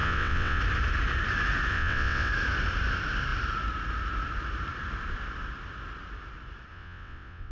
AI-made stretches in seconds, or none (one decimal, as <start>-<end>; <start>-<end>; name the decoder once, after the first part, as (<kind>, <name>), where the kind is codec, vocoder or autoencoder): 0.0-0.6 (vocoder, WaveNeXt); 1.7-2.3; 6.7-7.5